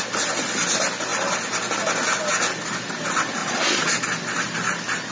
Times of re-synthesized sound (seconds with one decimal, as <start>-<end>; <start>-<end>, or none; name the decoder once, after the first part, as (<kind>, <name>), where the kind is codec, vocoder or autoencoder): 3.4-4.0 (vocoder, Vocos)